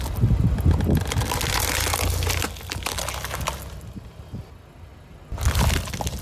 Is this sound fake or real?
real